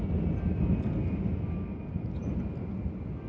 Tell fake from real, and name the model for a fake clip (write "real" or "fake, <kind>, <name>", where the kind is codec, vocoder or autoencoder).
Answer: real